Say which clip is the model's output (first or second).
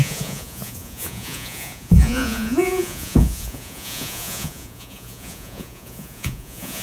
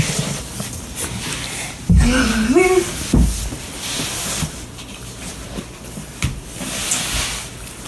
first